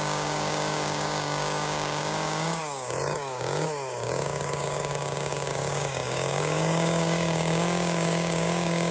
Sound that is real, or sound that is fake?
fake